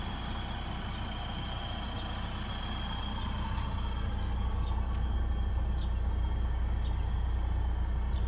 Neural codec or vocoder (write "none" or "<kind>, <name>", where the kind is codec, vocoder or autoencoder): none